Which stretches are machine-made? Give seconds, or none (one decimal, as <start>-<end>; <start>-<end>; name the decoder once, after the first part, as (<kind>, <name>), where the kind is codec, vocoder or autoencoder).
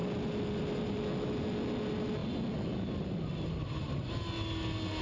none